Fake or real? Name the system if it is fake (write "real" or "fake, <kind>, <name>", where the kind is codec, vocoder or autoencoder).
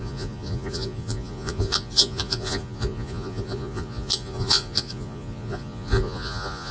fake, vocoder, Vocos